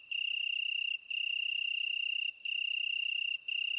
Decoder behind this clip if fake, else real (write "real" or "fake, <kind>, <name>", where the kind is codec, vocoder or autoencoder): real